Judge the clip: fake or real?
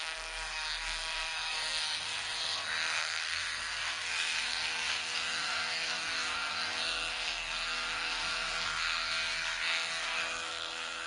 fake